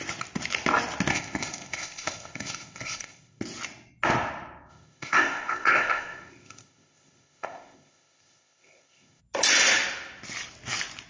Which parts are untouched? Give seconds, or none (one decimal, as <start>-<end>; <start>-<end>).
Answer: 0.0-1.1; 3.4-4.7; 9.2-11.1